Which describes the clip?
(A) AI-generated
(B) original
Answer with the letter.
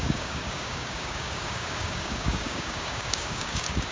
A